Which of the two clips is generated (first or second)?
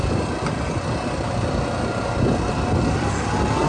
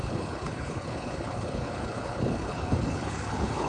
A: second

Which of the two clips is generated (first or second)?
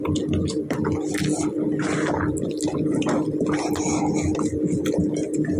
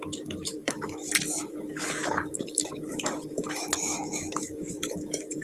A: second